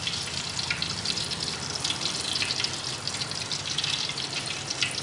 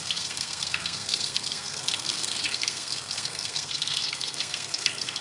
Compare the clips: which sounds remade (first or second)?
second